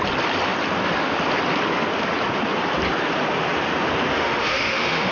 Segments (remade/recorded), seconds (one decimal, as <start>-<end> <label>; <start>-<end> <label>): 0.0-4.1 recorded; 4.1-5.1 remade